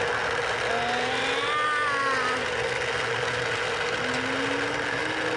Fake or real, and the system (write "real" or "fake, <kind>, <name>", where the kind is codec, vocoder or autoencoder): real